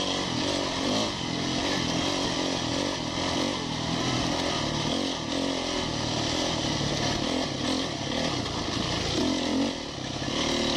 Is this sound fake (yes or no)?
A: no